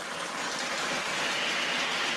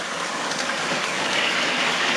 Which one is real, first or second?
first